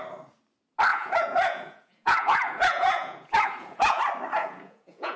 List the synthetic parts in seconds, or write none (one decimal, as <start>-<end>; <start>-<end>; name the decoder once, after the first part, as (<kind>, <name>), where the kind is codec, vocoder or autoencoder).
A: 0.9-4.0 (vocoder, Vocos); 4.4-5.2